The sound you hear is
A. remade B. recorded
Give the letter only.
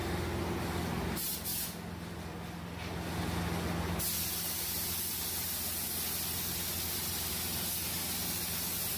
B